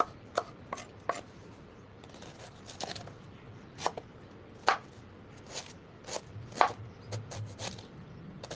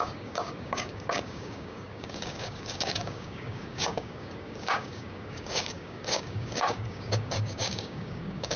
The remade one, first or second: second